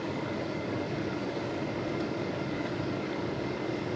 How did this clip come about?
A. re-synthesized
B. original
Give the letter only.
A